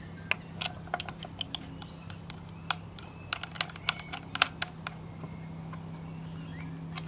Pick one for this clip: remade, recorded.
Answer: recorded